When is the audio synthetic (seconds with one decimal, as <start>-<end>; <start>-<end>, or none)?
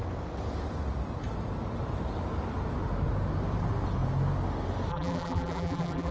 4.9-6.1